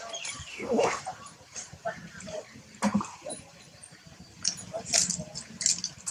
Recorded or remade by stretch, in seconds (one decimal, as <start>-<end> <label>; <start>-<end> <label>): 0.0-0.5 recorded; 0.5-1.0 remade; 1.0-6.1 recorded